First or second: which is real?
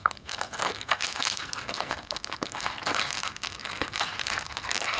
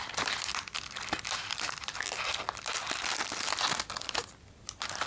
second